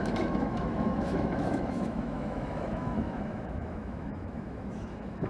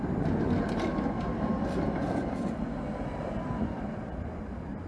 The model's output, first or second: first